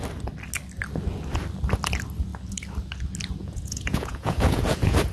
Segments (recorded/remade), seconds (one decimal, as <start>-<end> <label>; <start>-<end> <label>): 0.0-3.4 recorded; 3.4-5.1 remade

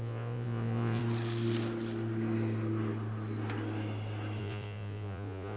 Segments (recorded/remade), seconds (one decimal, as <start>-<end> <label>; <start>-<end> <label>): 0.0-1.0 remade; 1.0-4.4 recorded; 4.4-5.6 remade

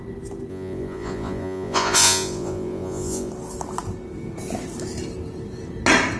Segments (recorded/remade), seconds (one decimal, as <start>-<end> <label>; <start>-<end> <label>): 0.0-0.5 recorded; 0.5-3.3 remade; 3.3-6.2 recorded

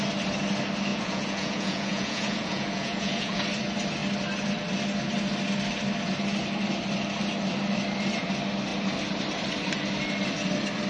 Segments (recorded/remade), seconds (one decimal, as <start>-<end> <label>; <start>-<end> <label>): 0.0-0.9 recorded; 0.9-3.5 remade; 3.5-10.9 recorded

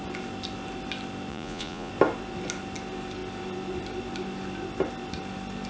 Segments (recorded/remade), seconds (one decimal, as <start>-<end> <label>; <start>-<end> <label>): 0.0-1.3 recorded; 1.3-1.9 remade; 1.9-5.7 recorded

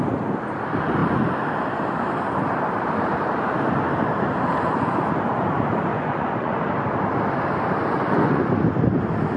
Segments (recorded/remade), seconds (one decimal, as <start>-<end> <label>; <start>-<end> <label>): 0.0-5.9 recorded; 5.9-6.6 remade; 6.6-7.9 recorded; 7.9-8.4 remade; 8.4-9.4 recorded